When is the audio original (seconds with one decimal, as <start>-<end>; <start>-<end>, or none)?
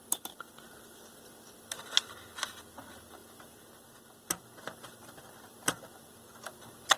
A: 0.0-7.0